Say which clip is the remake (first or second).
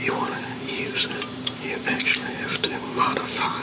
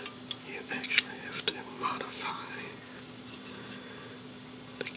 first